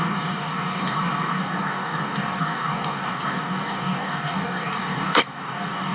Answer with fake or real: fake